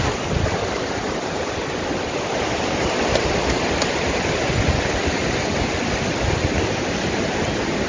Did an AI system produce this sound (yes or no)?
no